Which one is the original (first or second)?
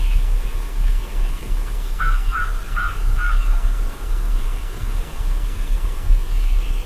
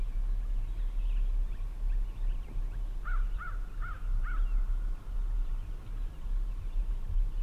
second